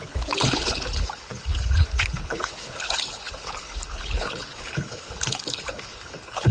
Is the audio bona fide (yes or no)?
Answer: no